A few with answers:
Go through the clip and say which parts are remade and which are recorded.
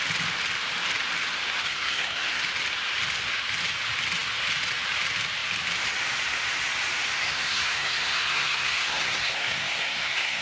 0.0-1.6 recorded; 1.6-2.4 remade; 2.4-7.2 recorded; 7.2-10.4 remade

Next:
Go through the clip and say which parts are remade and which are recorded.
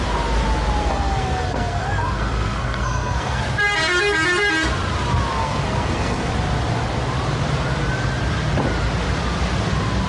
0.0-0.8 recorded; 0.8-3.4 remade; 3.4-5.4 recorded; 5.4-6.3 remade; 6.3-10.1 recorded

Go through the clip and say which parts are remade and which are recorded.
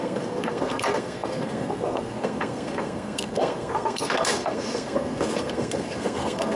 0.0-6.6 remade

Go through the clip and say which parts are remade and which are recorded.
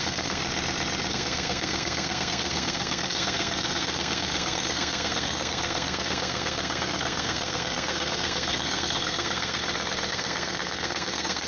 0.0-0.4 remade; 0.4-1.1 recorded; 1.1-9.6 remade; 9.6-10.1 recorded; 10.1-11.5 remade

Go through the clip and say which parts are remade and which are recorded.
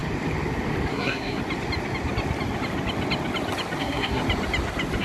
0.0-0.9 recorded; 0.9-1.4 remade; 1.4-3.8 recorded; 3.8-4.2 remade; 4.2-5.0 recorded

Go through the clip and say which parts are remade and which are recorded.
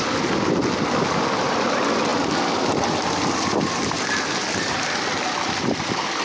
0.0-6.2 recorded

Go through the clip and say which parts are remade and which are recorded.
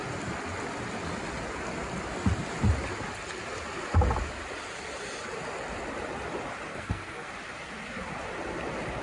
0.0-6.7 recorded; 6.7-7.3 remade; 7.3-9.0 recorded